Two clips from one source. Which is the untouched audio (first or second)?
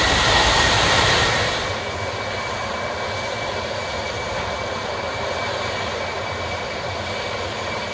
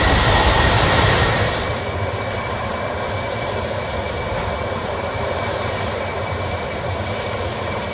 first